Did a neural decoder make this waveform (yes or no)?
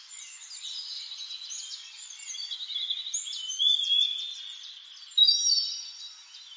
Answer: no